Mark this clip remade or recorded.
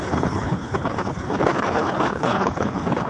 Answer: remade